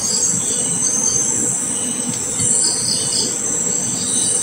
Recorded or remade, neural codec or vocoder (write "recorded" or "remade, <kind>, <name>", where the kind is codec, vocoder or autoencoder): recorded